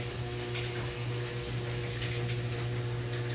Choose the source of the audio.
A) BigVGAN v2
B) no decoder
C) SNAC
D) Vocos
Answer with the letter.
B